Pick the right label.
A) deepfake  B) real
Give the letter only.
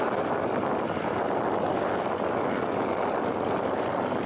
B